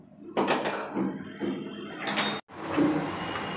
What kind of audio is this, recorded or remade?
recorded